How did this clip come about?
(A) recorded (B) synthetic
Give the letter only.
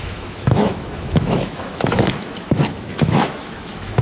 B